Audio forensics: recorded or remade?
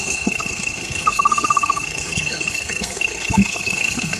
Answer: remade